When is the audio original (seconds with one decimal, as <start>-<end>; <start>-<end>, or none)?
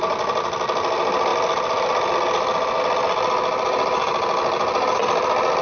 0.0-5.6